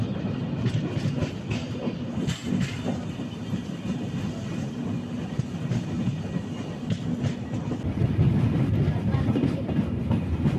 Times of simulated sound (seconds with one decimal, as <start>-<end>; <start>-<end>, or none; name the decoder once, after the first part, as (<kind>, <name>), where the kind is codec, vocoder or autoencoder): none